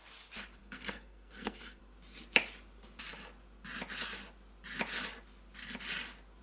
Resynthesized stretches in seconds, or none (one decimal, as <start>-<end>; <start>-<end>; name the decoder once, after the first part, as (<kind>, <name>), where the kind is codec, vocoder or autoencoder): 0.6-1.8 (codec, SNAC)